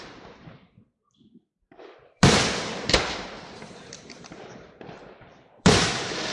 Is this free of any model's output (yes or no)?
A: no